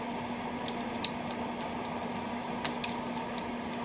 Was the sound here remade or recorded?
recorded